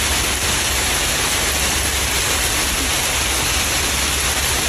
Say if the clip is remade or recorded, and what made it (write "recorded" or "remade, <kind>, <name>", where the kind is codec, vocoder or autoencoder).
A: recorded